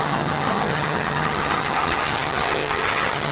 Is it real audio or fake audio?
fake